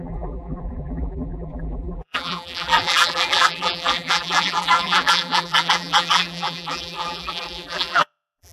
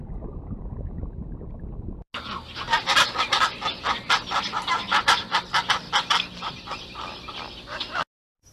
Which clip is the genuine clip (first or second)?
second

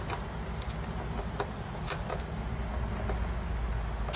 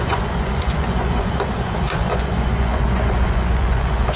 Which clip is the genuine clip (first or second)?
first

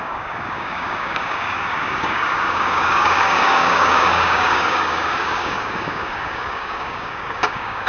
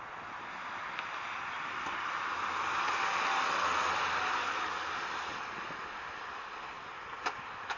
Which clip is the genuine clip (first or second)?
second